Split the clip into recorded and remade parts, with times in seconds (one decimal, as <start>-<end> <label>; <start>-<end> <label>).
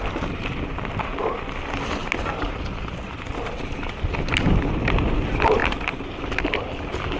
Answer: 0.0-7.2 recorded